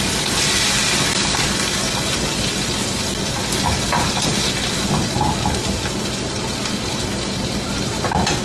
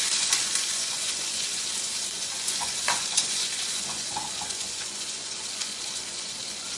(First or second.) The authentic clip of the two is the first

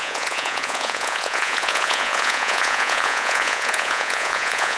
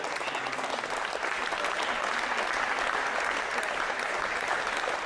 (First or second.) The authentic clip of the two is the second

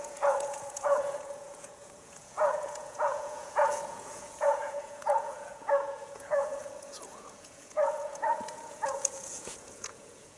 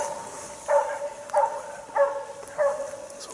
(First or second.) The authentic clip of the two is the second